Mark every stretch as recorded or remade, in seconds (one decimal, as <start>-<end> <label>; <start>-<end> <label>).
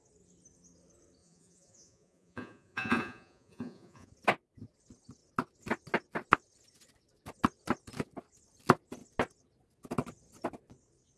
0.0-1.2 recorded; 1.2-4.1 remade; 4.1-11.2 recorded